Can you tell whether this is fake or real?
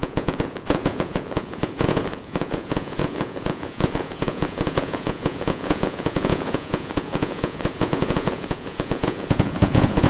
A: fake